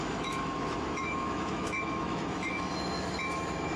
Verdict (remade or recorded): remade